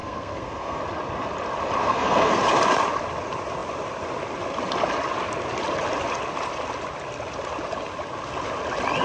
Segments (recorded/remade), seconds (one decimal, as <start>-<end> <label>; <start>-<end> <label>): 0.0-0.8 remade; 0.8-1.8 recorded; 1.8-2.4 remade; 2.4-9.0 recorded